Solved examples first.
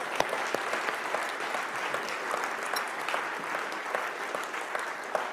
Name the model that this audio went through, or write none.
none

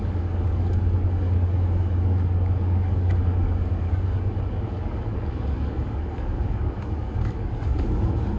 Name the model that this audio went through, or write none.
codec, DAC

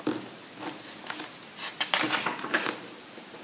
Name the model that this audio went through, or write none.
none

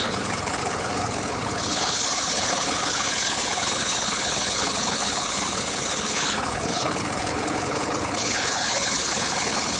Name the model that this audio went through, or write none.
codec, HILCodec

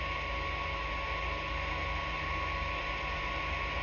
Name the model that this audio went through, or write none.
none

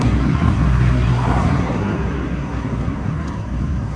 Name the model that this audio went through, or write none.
codec, SNAC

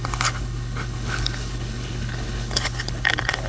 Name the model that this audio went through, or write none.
codec, HILCodec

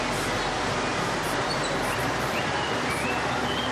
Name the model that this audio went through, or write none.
none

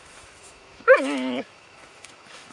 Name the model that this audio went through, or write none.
autoencoder, DAC-VAE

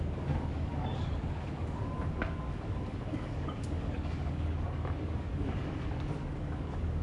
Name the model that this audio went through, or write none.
codec, DAC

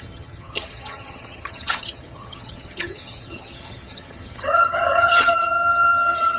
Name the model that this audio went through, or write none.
vocoder, HiFi-GAN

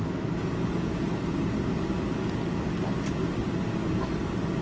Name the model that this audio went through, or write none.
none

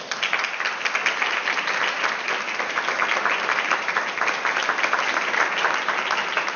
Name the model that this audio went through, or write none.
none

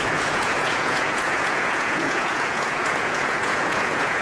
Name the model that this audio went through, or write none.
vocoder, Vocos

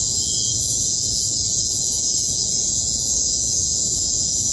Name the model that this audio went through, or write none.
vocoder, Vocos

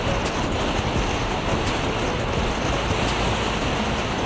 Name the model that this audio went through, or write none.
none